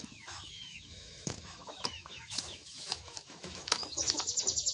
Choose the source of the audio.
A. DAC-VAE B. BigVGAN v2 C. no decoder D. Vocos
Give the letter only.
A